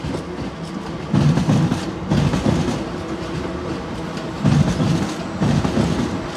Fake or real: real